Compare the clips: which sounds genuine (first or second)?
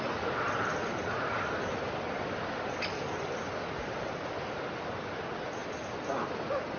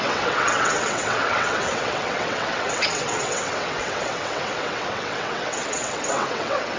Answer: first